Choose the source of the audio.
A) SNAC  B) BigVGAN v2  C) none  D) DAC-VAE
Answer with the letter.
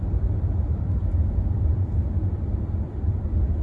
B